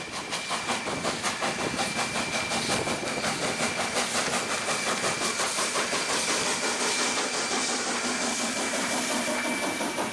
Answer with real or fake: real